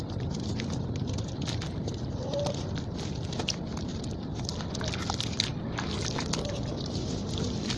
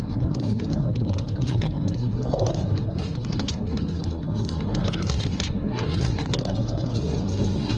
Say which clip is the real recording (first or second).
first